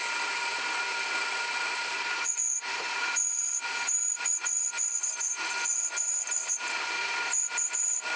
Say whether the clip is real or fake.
real